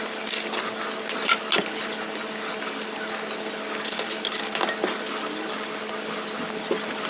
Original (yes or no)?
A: yes